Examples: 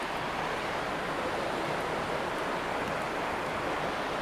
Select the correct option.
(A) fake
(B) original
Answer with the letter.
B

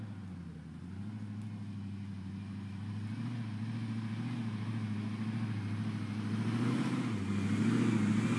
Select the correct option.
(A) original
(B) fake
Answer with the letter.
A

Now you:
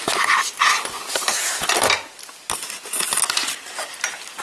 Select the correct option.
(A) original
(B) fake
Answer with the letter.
A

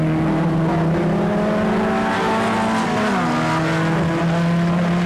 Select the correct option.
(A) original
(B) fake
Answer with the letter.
A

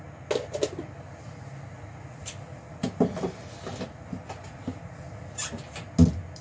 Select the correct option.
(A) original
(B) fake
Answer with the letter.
A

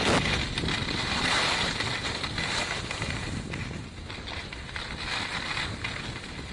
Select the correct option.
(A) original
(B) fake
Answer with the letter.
A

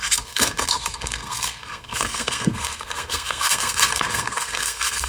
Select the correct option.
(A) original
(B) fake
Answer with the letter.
B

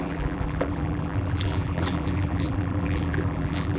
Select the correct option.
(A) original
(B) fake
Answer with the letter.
B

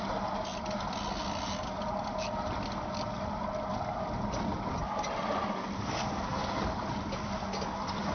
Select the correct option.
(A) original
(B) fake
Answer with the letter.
A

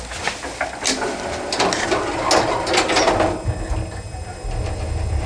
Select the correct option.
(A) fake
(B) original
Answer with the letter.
B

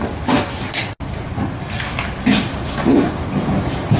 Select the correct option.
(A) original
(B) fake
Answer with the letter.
A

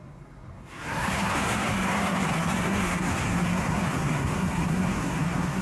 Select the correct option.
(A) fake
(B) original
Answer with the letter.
A